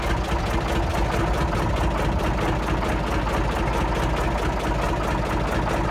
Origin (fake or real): real